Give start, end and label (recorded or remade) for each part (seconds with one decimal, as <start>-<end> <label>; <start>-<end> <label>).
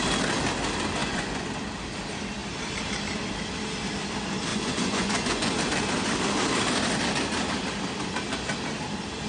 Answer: 0.0-1.0 recorded; 1.0-1.5 remade; 1.5-4.5 recorded; 4.5-5.6 remade; 5.6-9.3 recorded